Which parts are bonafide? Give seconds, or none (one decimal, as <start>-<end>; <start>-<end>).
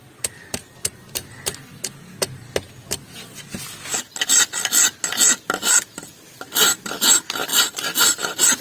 1.2-6.2; 7.5-8.2